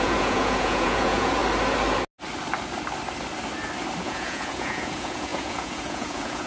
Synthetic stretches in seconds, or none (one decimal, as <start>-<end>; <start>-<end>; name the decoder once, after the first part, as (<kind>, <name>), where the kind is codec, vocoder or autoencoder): 0.0-1.4 (vocoder, Vocos); 4.0-6.5